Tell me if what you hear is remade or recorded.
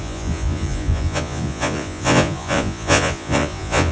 remade